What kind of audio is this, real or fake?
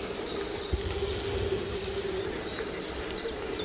real